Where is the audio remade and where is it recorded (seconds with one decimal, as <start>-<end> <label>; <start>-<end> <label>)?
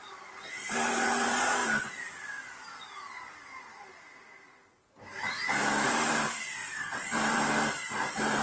0.0-1.6 remade; 1.6-6.1 recorded; 6.1-8.4 remade